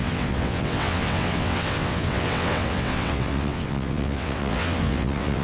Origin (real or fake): fake